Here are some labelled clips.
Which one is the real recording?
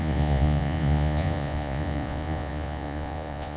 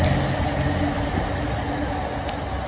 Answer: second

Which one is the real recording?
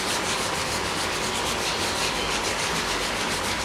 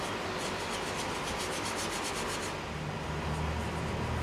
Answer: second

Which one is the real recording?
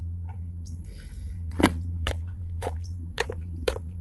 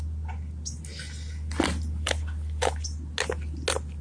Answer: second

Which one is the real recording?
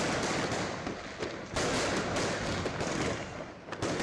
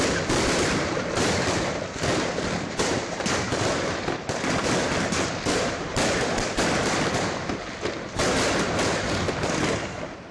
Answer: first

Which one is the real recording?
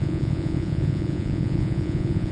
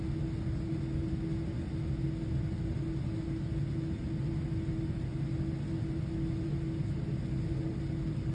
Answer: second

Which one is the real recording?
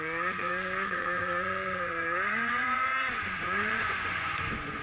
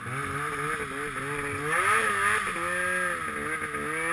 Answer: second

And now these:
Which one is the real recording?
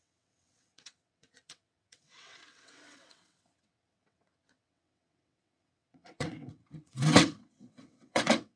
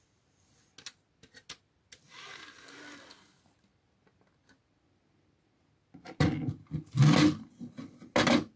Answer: second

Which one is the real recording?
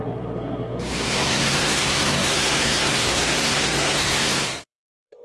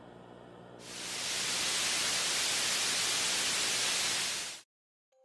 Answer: second